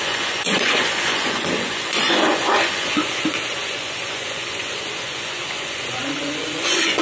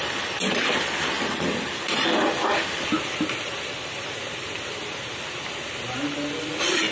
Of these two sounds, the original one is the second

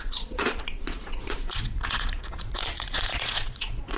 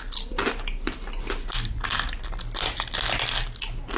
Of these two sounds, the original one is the second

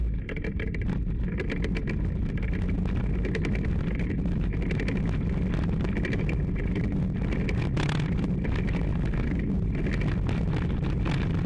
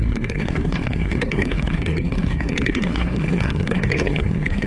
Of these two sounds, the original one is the first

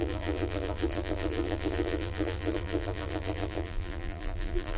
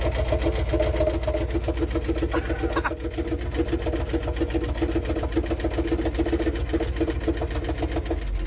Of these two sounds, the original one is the second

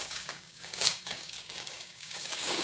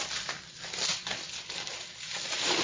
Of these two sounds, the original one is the second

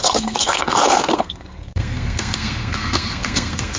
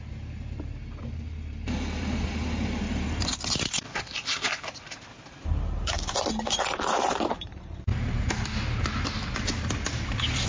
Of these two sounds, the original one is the second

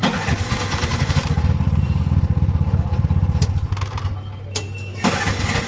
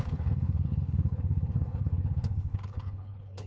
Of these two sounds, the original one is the first